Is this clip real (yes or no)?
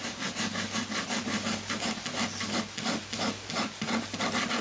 yes